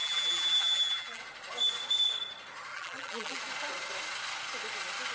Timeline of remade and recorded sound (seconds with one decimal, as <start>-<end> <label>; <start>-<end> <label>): 0.0-1.2 remade; 1.2-2.7 recorded; 2.7-3.4 remade; 3.4-5.1 recorded